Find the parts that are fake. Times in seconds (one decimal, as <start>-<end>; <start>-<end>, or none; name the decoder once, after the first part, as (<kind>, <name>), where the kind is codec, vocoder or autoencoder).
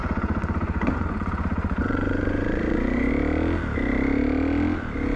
0.0-3.1 (vocoder, Vocos)